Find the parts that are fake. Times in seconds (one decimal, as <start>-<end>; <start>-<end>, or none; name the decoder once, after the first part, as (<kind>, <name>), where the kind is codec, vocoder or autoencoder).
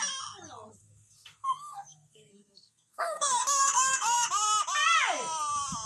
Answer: 0.8-4.3 (codec, SNAC)